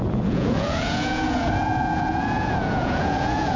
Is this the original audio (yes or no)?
no